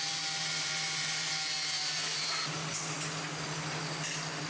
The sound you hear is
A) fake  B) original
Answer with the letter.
B